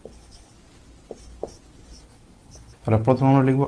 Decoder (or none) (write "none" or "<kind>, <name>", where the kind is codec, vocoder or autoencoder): none